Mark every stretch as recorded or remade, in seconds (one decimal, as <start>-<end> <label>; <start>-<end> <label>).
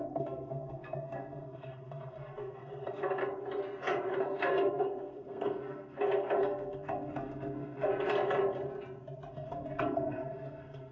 0.0-3.2 remade; 3.2-4.2 recorded; 4.2-7.9 remade; 7.9-9.3 recorded; 9.3-10.9 remade